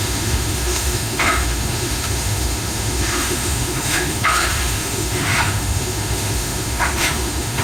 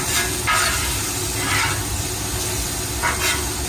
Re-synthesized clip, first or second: first